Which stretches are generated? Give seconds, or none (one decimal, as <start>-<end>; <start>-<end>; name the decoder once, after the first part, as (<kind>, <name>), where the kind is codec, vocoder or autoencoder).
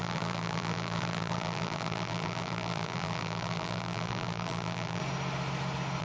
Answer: 0.0-5.0 (vocoder, BigVGAN v2)